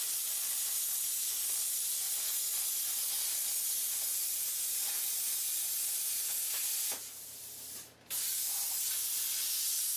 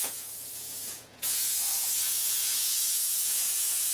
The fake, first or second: second